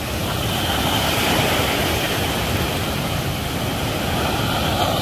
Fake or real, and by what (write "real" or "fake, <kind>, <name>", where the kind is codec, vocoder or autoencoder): real